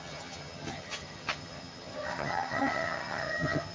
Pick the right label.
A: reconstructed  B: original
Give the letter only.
A